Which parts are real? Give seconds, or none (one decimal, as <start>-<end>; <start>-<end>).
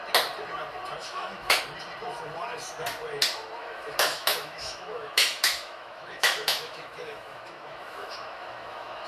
0.0-1.0; 1.6-3.6